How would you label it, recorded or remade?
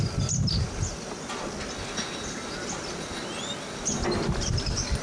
recorded